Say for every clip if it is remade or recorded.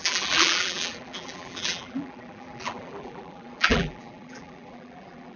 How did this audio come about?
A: remade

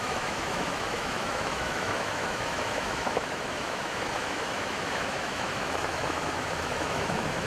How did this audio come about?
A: remade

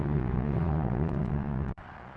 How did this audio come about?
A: remade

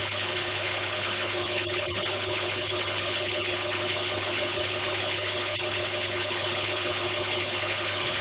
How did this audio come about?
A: remade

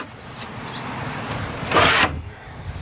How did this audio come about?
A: recorded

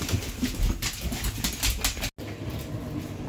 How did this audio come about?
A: recorded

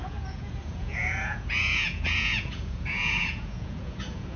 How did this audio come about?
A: remade